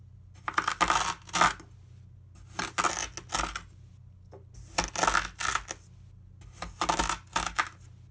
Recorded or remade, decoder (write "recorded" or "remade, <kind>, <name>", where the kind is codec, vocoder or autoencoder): recorded